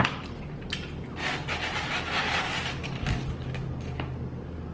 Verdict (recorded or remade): recorded